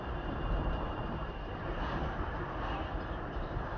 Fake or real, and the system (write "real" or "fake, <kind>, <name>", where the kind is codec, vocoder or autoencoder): fake, vocoder, BigVGAN v2